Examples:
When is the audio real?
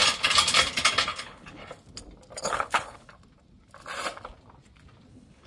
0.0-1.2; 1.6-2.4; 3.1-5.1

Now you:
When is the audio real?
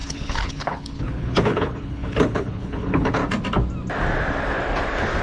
3.2-5.2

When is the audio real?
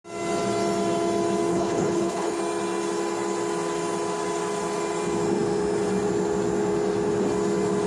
0.0-1.5; 2.4-7.9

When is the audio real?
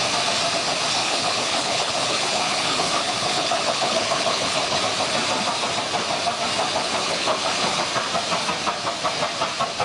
0.0-1.0; 4.8-6.8; 7.8-9.8